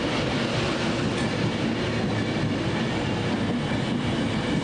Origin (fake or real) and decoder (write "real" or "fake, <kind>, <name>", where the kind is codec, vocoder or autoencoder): real